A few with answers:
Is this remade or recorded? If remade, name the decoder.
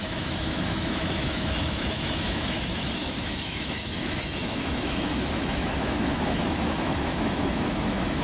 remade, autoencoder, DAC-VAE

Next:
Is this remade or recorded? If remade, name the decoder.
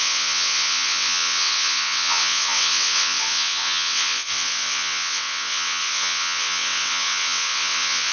remade, vocoder, WaveNeXt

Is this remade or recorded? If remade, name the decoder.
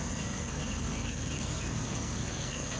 remade, codec, SNAC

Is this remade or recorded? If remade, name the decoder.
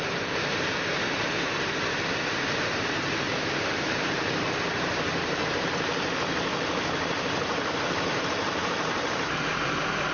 remade, vocoder, BigVGAN v2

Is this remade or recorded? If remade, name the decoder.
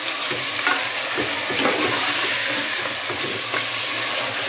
recorded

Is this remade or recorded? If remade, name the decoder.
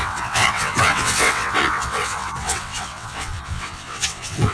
remade, vocoder, WaveNeXt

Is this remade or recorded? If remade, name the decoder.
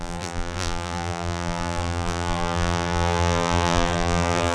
remade, vocoder, BigVGAN v2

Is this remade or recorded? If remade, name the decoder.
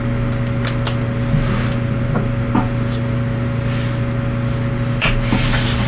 recorded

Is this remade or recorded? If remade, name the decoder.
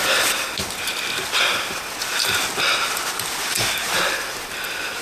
recorded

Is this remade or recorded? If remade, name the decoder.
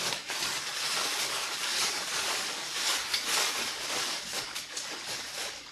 remade, codec, DAC